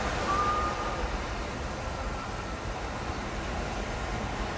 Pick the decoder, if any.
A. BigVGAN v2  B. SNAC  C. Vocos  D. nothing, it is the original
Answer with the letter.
D